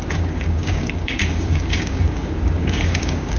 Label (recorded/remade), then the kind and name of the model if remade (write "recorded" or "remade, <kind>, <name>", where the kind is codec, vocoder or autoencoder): remade, codec, DAC